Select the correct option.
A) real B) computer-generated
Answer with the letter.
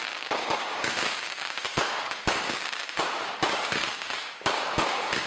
B